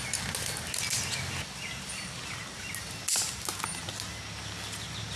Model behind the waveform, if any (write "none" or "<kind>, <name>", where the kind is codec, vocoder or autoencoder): none